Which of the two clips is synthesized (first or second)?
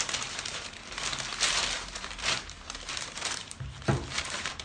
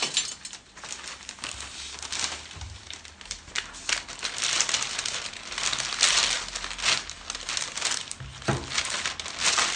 first